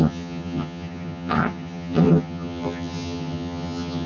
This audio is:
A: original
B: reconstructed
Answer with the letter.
B